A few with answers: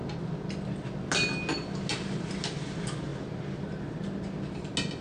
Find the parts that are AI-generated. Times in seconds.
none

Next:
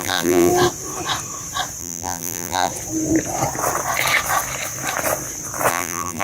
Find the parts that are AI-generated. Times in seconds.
0.0-0.5 (vocoder, BigVGAN v2); 1.8-2.7; 5.7-6.2

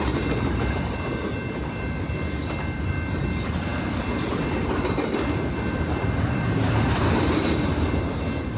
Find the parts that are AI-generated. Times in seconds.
3.7-7.3 (vocoder, BigVGAN v2)